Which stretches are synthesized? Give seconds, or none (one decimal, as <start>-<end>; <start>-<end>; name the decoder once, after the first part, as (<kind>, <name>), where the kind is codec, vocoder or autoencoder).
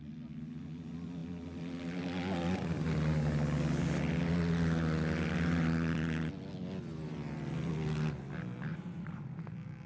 8.7-9.2 (vocoder, Vocos)